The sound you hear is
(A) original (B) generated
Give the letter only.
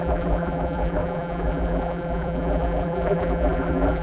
B